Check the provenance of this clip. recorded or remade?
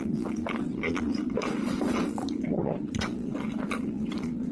remade